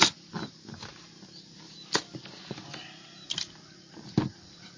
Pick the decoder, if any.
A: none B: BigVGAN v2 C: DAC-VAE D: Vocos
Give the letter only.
A